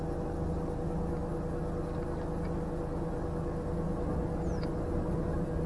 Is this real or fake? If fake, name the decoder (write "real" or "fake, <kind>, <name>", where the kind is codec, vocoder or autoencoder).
real